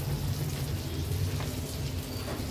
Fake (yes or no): no